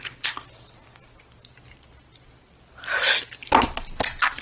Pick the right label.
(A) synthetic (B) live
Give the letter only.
B